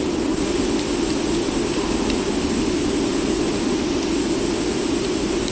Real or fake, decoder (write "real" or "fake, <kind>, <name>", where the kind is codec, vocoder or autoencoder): real